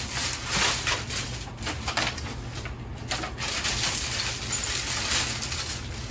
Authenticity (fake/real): real